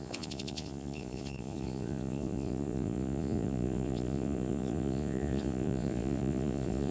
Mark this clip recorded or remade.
remade